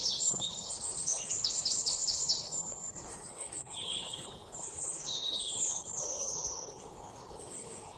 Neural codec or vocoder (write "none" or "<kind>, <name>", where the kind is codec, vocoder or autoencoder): codec, HILCodec